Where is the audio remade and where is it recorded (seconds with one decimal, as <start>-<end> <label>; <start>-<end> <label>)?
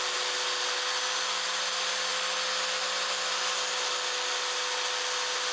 0.0-5.5 recorded